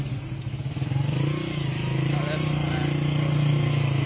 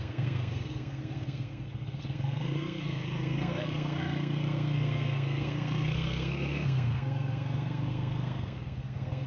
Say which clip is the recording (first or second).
first